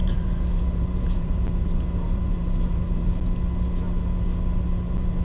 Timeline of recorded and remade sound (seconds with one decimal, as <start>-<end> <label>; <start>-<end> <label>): 0.0-3.1 remade; 3.1-5.2 recorded